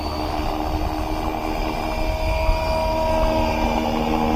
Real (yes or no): yes